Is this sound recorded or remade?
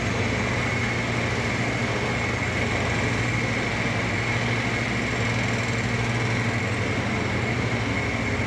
recorded